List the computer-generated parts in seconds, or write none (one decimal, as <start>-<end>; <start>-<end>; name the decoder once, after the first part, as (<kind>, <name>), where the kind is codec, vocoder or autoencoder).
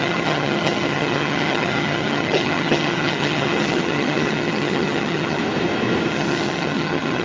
0.0-5.4 (vocoder, HiFi-GAN); 6.1-7.2